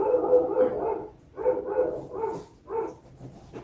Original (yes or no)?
no